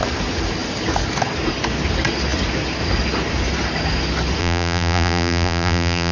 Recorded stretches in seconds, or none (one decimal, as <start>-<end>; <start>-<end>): 0.0-4.4